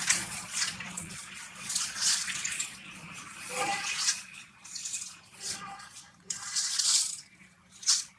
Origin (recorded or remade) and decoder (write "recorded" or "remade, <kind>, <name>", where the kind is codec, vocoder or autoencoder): remade, vocoder, Vocos